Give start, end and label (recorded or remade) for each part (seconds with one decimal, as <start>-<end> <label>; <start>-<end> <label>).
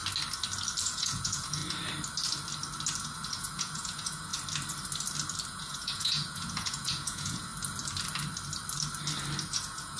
0.0-0.8 recorded; 0.8-1.6 remade; 1.6-3.0 recorded; 3.0-4.3 remade; 4.3-5.5 recorded; 5.5-7.5 remade; 7.5-9.4 recorded; 9.4-10.0 remade